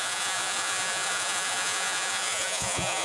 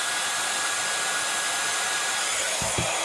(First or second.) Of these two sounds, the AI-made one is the first